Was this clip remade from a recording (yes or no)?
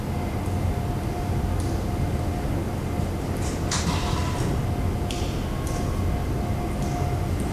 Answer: no